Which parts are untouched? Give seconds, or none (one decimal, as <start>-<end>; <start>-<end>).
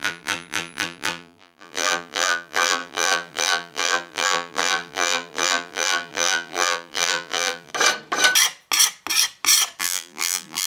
7.7-9.8